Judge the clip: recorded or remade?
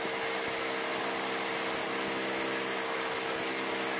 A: recorded